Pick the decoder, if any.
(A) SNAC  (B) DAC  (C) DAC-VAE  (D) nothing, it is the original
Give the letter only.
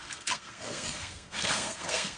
A